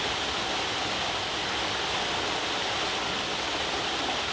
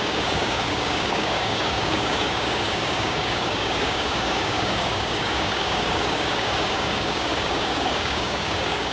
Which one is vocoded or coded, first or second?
second